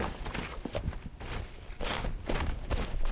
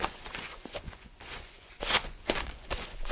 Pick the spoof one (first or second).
second